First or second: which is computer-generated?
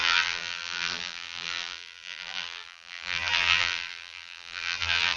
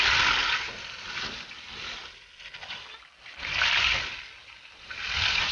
first